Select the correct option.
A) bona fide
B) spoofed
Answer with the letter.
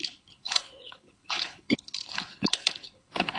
B